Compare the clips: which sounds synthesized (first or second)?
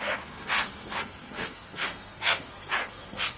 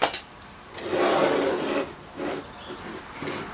first